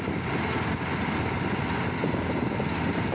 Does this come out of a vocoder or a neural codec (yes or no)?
no